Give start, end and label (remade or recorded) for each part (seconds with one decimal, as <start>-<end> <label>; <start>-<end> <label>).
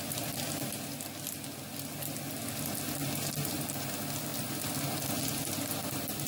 0.0-6.3 recorded